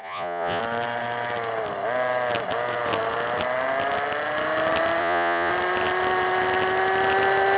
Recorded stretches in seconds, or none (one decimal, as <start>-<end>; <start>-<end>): 0.6-5.0; 5.5-7.6